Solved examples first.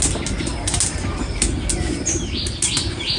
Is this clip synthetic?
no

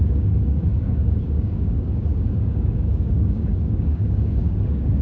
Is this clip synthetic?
yes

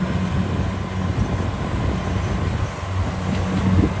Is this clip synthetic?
no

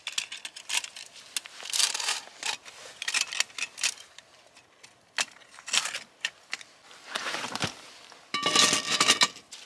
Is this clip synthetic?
no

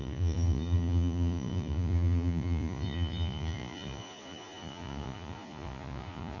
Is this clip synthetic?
yes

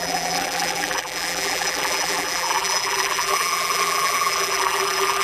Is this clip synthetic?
yes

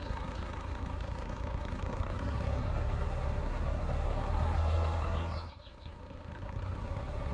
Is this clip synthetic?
yes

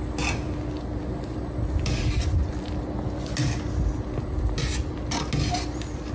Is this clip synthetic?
no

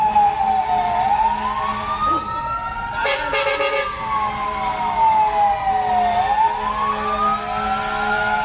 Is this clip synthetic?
no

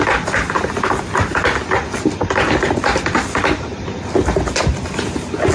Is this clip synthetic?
no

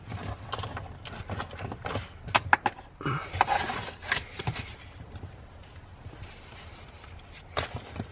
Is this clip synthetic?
no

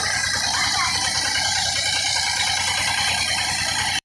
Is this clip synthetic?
yes